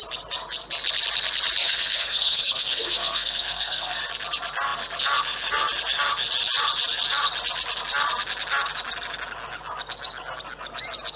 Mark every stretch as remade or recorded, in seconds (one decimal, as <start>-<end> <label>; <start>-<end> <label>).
0.0-1.6 recorded; 1.6-4.0 remade; 4.0-11.2 recorded